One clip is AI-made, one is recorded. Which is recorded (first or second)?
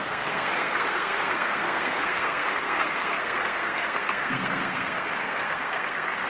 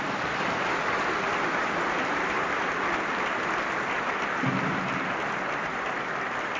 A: second